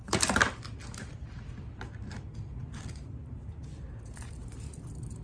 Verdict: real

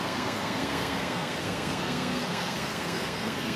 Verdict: fake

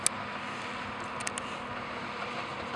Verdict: real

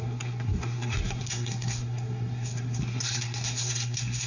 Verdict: fake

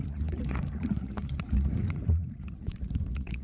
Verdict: fake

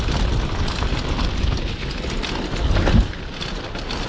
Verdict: real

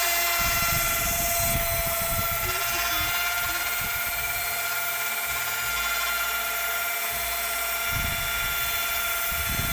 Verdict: real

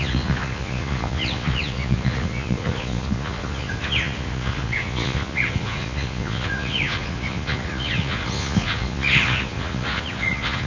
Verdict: fake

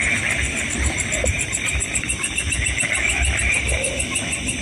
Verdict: real